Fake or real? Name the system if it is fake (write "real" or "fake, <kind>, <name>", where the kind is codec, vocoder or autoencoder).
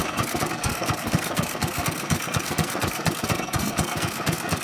fake, codec, SNAC